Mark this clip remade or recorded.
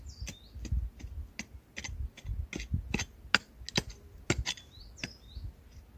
recorded